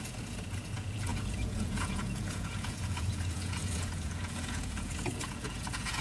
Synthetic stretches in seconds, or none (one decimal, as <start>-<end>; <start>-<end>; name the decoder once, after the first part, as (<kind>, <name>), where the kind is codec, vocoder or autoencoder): 0.0-6.0 (vocoder, Vocos)